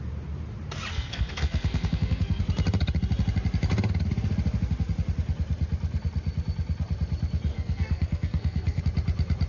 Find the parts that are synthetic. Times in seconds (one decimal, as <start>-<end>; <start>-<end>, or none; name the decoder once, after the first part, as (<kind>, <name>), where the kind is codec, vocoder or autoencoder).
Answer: 0.9-2.4 (codec, SNAC); 7.5-8.8